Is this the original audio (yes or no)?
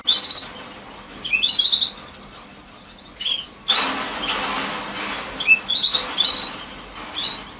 yes